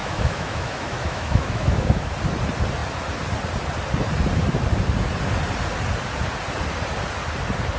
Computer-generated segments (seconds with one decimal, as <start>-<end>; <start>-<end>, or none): 0.0-2.1